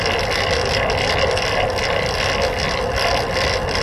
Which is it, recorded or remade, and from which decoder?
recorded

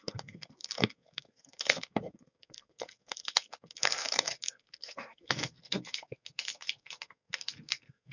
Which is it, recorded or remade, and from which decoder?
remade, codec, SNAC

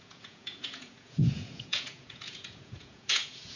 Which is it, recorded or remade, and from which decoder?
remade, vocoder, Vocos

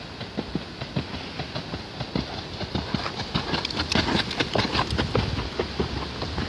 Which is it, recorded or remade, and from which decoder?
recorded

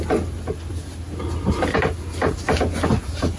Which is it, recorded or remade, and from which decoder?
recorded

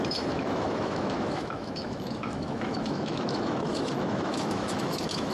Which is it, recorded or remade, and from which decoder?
remade, autoencoder, DAC-VAE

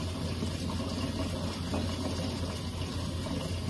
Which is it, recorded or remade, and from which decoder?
recorded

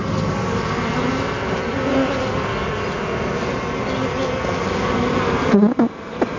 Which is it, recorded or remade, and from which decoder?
recorded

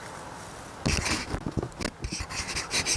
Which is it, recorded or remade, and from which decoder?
recorded